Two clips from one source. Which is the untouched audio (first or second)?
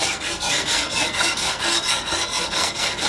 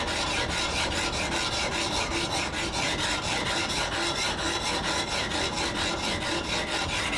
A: second